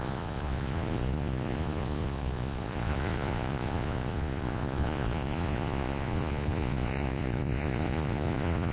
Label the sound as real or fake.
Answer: fake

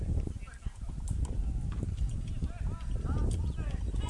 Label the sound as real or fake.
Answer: real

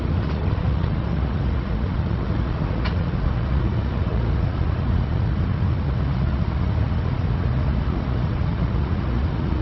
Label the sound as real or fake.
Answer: fake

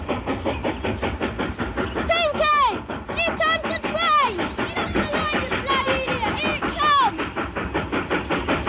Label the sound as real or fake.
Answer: real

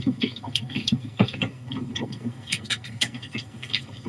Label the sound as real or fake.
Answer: fake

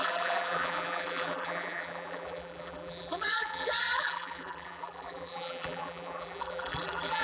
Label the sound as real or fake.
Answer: fake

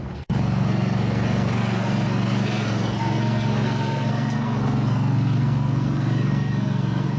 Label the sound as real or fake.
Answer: fake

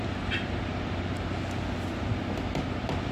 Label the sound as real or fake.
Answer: real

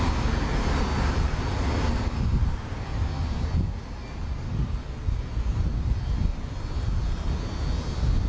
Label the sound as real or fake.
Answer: real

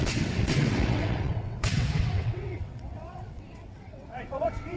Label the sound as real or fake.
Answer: fake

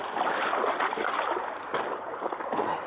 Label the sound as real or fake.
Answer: real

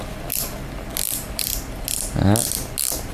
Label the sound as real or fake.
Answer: real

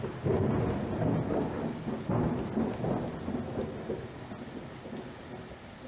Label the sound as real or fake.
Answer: real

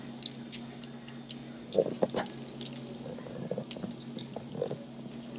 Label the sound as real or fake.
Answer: real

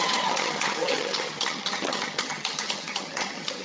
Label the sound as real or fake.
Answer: fake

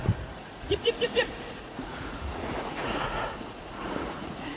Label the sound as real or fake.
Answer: fake